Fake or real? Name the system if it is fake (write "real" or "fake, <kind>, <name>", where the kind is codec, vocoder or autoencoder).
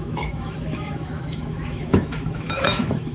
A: fake, autoencoder, DAC-VAE